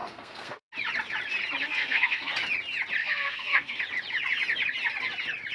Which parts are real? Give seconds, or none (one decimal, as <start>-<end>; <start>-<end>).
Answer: 0.7-1.6; 2.3-3.0; 3.8-5.5